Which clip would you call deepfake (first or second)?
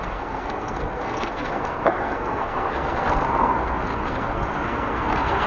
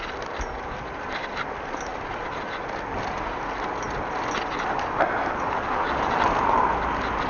first